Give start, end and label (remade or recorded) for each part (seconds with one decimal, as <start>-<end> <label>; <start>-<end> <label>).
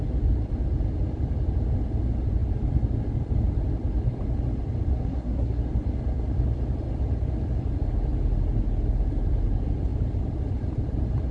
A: 0.0-4.9 recorded; 4.9-5.6 remade; 5.6-11.3 recorded